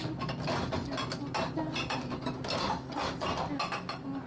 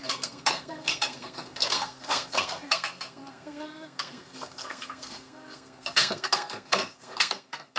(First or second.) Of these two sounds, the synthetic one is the second